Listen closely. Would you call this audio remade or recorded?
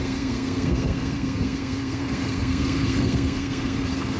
remade